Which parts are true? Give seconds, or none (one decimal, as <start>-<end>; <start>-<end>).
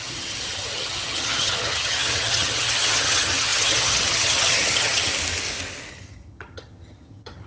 5.1-5.9